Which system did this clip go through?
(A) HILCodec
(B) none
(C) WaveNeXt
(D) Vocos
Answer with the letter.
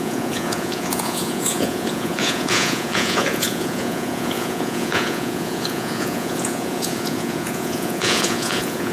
D